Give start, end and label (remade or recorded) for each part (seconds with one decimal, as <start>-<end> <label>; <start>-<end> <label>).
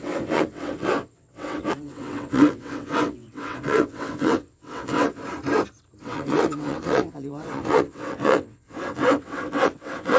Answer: 0.0-5.2 remade; 5.2-6.0 recorded; 6.0-10.2 remade